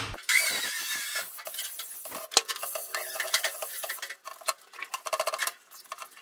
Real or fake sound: real